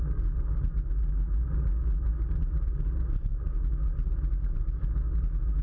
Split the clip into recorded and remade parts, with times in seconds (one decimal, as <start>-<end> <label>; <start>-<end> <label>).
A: 0.0-5.6 recorded